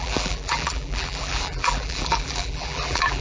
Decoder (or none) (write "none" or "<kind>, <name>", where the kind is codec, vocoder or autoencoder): vocoder, BigVGAN v2